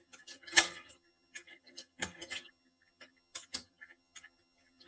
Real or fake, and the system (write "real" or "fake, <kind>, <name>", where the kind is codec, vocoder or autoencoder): fake, vocoder, HiFi-GAN